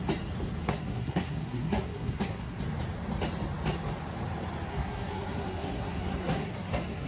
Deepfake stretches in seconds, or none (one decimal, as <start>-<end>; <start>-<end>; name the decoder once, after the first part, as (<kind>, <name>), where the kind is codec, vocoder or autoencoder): 0.6-2.6 (codec, SNAC); 4.7-7.1